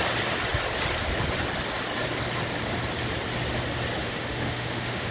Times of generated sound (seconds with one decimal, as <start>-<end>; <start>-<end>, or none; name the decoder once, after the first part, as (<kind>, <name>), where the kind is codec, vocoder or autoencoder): 4.0-5.1 (autoencoder, DAC-VAE)